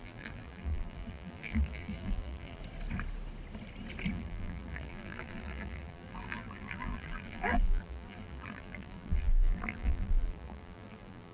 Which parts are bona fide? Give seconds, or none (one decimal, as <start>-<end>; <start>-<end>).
2.6-4.1